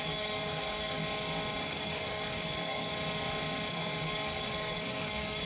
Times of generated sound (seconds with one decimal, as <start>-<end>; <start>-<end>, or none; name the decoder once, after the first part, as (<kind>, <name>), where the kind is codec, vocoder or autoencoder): 0.0-1.0 (codec, SNAC); 1.6-2.9; 3.7-5.5